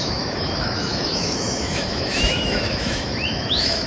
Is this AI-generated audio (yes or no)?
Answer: yes